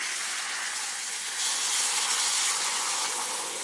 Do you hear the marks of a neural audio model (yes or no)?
yes